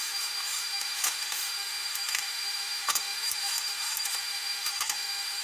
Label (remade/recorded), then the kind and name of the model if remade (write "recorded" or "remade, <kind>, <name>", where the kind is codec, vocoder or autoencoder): remade, autoencoder, DAC-VAE